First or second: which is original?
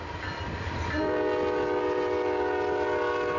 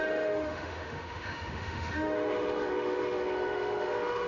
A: first